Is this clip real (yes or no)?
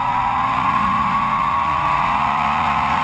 no